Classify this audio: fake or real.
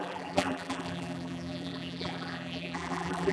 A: fake